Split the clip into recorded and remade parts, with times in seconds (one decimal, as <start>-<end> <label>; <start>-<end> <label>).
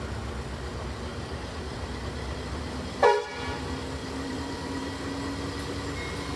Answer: 0.0-1.1 recorded; 1.1-3.3 remade; 3.3-4.0 recorded; 4.0-4.9 remade; 4.9-6.4 recorded